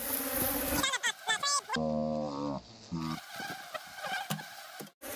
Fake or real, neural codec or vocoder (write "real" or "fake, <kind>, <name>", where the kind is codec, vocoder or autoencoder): real